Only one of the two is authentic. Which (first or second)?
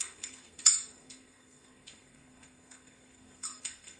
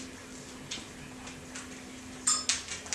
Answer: second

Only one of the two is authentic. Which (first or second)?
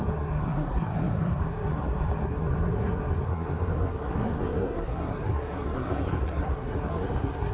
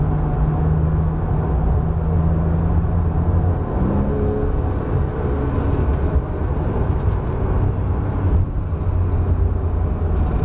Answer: second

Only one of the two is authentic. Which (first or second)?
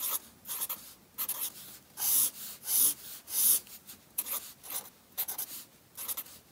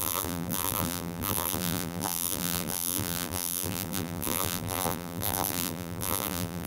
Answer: first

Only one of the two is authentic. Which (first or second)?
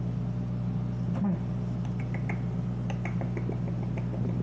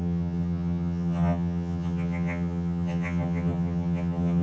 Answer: first